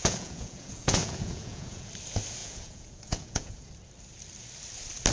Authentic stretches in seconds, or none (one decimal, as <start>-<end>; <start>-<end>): 1.9-2.4; 3.7-5.1